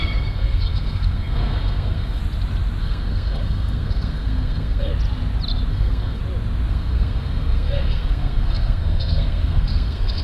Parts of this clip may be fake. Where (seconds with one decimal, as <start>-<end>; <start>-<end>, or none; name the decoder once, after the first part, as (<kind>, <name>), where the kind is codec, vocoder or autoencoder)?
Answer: 0.0-2.2 (codec, SNAC); 2.8-4.9; 5.7-6.2; 6.7-10.2